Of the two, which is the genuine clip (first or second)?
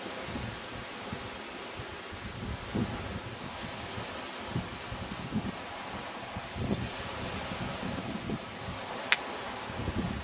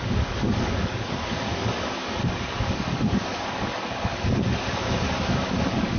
first